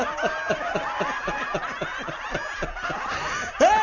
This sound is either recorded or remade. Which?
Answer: recorded